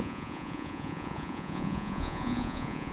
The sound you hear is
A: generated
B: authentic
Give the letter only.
A